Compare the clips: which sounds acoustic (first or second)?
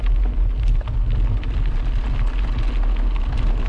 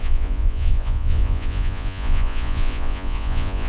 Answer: first